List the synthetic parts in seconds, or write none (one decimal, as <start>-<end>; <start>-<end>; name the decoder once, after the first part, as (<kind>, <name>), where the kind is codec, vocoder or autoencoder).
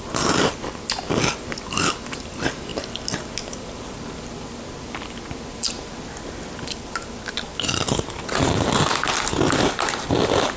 none